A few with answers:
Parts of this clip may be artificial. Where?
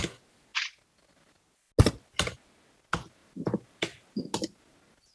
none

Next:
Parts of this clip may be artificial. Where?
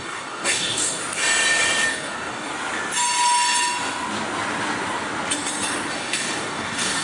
0.0-1.0 (codec, DAC); 1.9-2.5; 5.9-7.0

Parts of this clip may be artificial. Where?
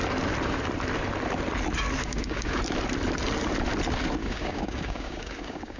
2.0-2.6 (codec, DAC); 4.2-5.8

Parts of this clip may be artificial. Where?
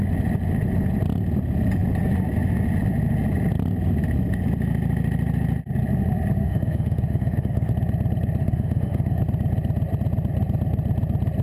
6.4-7.7 (autoencoder, DAC-VAE); 8.4-9.2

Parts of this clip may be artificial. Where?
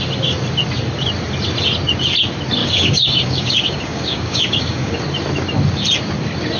2.6-5.0 (codec, DAC)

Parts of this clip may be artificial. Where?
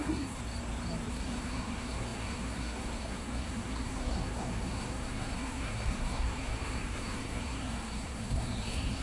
0.0-0.4 (codec, SNAC); 1.1-9.0